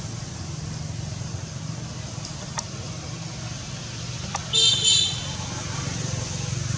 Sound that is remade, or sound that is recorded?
recorded